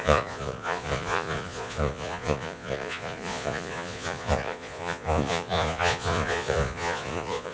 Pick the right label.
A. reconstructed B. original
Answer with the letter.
A